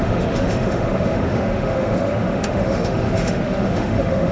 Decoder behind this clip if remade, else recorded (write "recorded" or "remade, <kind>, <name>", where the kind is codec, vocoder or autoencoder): remade, autoencoder, DAC-VAE